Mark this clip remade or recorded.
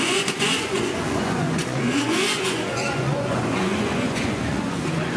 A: remade